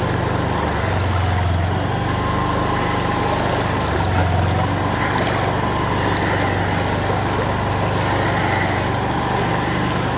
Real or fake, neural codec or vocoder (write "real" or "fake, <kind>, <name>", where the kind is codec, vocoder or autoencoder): real